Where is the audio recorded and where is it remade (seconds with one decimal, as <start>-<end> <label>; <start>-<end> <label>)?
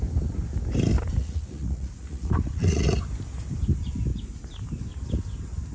0.0-1.2 recorded; 1.2-2.9 remade; 2.9-5.7 recorded